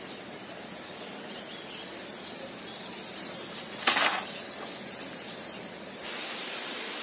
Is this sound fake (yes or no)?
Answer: no